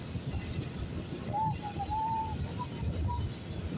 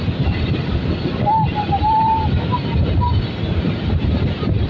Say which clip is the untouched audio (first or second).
first